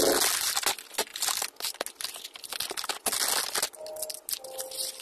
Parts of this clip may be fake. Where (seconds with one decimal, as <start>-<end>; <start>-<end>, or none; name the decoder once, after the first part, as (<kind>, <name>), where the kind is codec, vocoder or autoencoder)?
none